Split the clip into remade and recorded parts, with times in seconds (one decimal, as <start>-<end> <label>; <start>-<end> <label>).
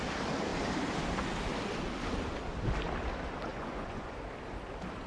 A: 0.0-3.5 recorded; 3.5-4.2 remade; 4.2-5.1 recorded